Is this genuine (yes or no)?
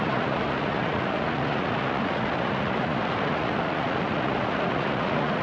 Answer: no